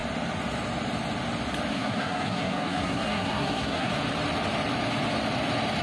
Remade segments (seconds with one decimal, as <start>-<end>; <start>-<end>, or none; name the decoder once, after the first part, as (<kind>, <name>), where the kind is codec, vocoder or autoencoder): 1.7-3.9 (codec, SNAC)